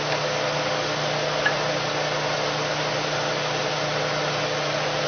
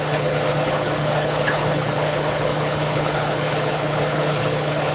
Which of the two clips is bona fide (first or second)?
first